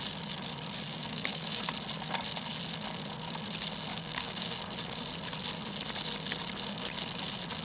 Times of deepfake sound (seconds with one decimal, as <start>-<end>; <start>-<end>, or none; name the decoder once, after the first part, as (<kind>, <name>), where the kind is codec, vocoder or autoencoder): 0.9-1.6 (codec, DAC); 3.9-4.5